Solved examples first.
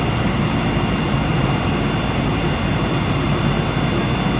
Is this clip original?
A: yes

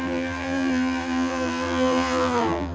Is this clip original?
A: no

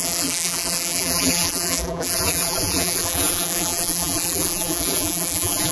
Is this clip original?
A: no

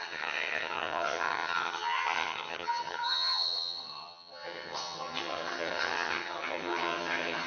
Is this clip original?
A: no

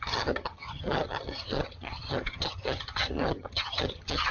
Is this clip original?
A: no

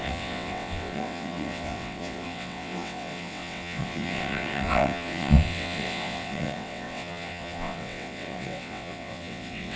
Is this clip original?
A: no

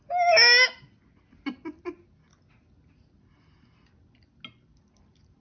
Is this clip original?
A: yes